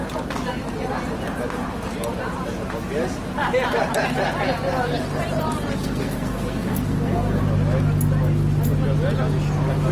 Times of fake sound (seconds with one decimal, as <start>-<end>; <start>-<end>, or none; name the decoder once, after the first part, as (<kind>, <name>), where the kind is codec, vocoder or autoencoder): 5.8-7.4 (codec, SNAC)